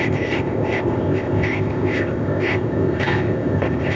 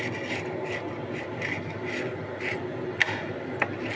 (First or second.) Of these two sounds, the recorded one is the second